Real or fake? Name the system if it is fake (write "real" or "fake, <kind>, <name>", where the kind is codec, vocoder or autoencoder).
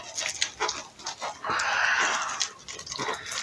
real